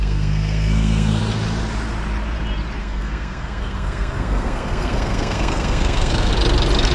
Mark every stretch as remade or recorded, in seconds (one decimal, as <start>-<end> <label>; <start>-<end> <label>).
0.0-1.2 remade; 1.2-2.8 recorded; 2.8-6.3 remade; 6.3-6.9 recorded